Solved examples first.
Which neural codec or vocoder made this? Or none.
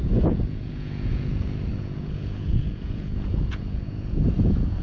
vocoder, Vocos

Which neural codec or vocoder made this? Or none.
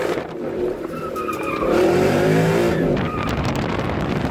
vocoder, BigVGAN v2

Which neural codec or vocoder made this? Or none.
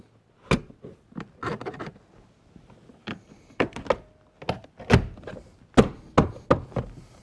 none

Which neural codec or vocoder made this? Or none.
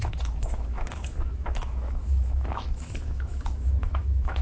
autoencoder, DAC-VAE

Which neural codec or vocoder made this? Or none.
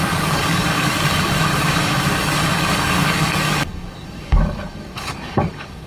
codec, DAC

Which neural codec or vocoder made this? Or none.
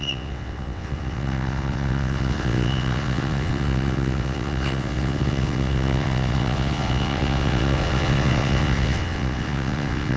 vocoder, WaveNeXt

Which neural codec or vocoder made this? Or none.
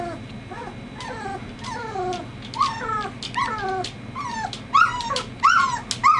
none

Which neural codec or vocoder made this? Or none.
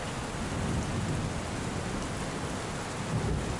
none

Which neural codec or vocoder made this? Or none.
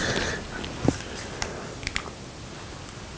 none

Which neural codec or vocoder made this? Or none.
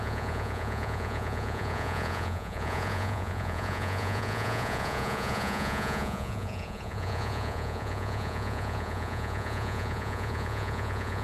vocoder, Vocos